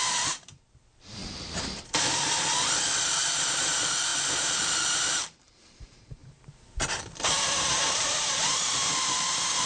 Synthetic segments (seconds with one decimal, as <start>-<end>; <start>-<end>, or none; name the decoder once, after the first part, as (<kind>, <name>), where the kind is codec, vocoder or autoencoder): 0.0-1.2 (vocoder, BigVGAN v2); 3.3-9.7